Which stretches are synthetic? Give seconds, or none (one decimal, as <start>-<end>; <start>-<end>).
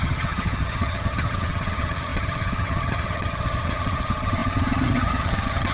0.0-5.7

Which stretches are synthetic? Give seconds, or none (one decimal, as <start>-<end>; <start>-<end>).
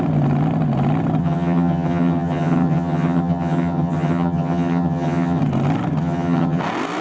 1.2-5.4; 6.0-6.6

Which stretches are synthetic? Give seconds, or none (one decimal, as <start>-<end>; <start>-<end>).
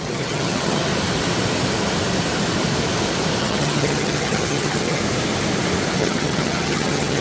0.0-0.9; 3.4-5.0; 6.0-7.2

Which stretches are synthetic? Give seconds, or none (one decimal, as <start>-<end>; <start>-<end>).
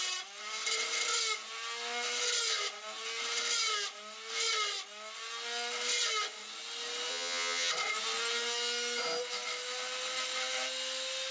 7.1-7.7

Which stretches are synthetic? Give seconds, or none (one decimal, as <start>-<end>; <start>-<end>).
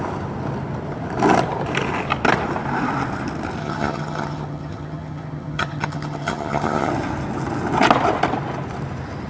3.6-6.9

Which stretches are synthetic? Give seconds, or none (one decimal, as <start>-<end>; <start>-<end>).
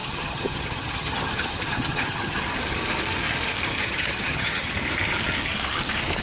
0.0-2.4; 3.8-4.7